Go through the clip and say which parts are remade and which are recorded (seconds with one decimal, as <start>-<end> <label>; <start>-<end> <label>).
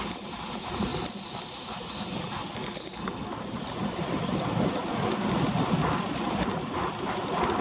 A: 0.0-0.9 remade; 0.9-3.6 recorded; 3.6-4.8 remade; 4.8-7.6 recorded